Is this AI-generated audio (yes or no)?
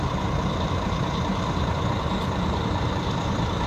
yes